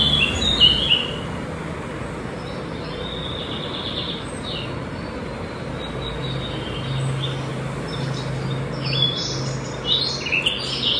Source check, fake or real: real